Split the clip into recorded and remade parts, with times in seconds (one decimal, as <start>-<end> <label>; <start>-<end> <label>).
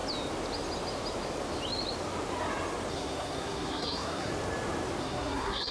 0.0-2.9 recorded; 2.9-4.3 remade; 4.3-5.0 recorded; 5.0-5.7 remade